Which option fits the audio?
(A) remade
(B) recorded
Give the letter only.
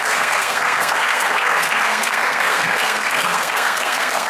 A